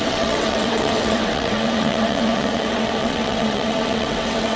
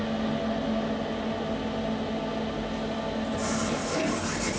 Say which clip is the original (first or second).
second